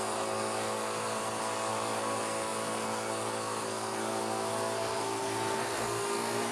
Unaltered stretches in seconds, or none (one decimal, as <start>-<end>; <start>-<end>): none

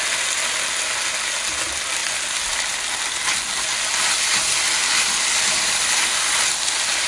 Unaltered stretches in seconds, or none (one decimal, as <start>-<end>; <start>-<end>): 0.0-7.1

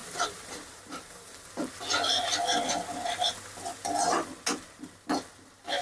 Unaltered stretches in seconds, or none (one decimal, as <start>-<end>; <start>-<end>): 1.7-5.8

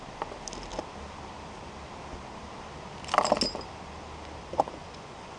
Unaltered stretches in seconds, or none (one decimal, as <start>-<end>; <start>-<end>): 0.0-4.4

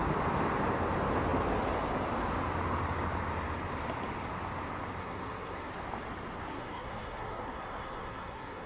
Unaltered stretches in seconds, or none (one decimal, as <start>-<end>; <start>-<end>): 0.0-5.0; 5.7-6.5